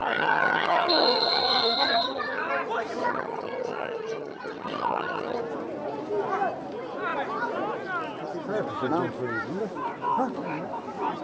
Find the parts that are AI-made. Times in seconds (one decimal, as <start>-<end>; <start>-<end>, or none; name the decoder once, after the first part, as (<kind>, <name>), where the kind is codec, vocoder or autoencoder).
0.0-2.5 (vocoder, HiFi-GAN); 3.0-5.4

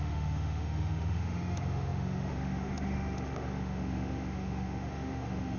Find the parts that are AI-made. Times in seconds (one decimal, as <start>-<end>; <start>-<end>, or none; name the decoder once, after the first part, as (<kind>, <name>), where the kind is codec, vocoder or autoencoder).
0.0-5.6 (autoencoder, DAC-VAE)

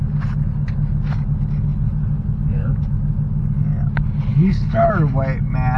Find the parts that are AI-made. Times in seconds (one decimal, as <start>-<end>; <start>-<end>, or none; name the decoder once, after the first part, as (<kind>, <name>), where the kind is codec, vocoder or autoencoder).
4.3-4.9 (codec, HILCodec)

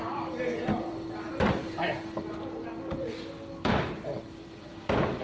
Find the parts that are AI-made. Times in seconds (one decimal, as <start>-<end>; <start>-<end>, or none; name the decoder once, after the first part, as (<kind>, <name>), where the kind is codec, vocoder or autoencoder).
0.0-1.6 (vocoder, BigVGAN v2); 2.9-5.2

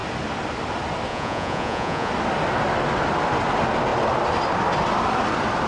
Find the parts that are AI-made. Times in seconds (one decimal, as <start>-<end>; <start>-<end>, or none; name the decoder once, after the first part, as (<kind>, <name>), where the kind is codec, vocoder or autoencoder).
1.1-2.1 (vocoder, Vocos)